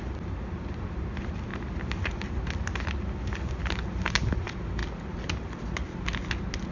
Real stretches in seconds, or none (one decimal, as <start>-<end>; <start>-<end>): 0.0-6.7